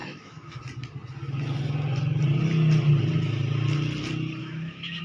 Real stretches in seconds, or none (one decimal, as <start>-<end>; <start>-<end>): 0.6-4.4

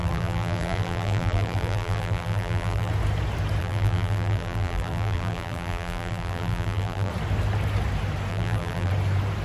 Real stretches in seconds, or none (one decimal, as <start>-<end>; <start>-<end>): 2.9-3.6; 7.1-8.3; 8.9-9.4

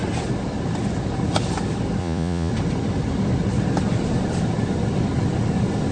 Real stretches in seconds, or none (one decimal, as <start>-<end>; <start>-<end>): 0.0-2.0; 2.5-5.9

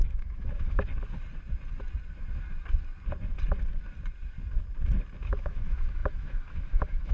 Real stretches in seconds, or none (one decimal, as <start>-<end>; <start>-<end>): 0.9-5.2

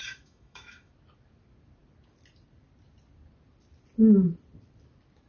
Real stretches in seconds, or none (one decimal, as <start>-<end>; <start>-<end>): 0.9-5.3

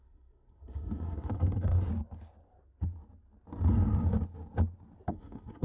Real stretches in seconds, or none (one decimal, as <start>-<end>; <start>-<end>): 1.9-5.1

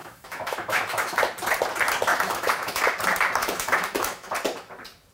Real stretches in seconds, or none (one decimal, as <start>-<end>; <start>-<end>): 1.2-2.1; 2.8-3.4; 4.3-5.1